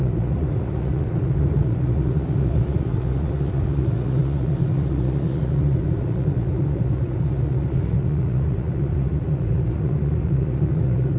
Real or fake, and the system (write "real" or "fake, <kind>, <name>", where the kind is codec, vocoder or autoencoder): fake, vocoder, Vocos